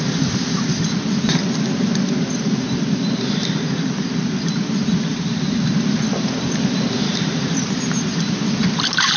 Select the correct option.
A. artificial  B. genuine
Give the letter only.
B